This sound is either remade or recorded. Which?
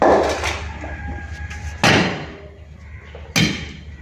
recorded